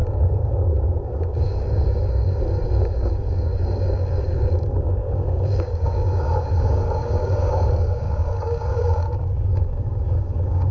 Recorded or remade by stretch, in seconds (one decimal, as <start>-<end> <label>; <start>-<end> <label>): 0.0-10.7 remade